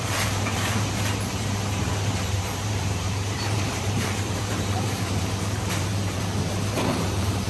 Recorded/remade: remade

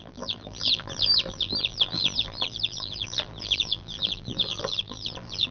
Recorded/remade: remade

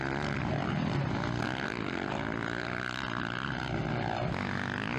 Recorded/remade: recorded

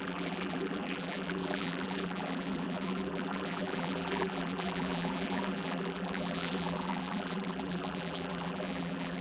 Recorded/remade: remade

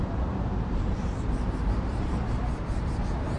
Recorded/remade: remade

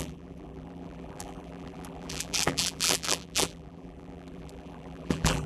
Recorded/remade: remade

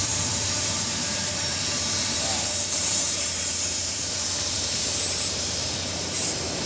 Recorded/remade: remade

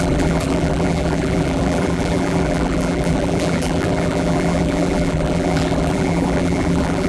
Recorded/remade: remade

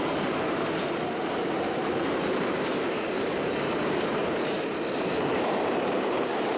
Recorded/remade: remade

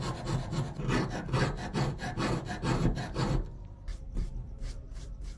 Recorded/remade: remade